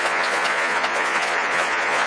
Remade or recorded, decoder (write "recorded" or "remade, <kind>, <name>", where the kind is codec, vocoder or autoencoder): remade, vocoder, Vocos